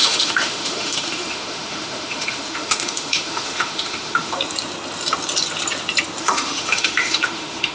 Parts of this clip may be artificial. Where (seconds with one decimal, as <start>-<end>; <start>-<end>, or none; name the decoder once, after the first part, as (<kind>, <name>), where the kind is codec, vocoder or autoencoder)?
0.0-4.3 (autoencoder, DAC-VAE); 6.2-7.7